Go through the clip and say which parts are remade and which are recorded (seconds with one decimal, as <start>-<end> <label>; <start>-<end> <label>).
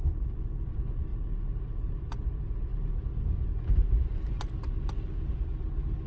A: 0.0-6.1 recorded